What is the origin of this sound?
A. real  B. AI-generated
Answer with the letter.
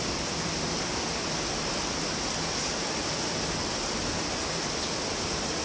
A